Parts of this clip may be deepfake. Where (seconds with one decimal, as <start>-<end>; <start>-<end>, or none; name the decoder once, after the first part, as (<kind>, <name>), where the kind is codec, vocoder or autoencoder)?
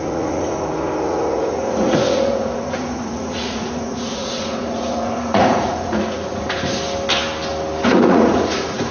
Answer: 0.0-6.7 (vocoder, Vocos); 7.9-8.9